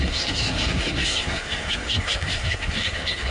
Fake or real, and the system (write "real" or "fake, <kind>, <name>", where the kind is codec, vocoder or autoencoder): fake, codec, SNAC